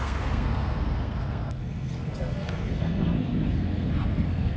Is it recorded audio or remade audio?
remade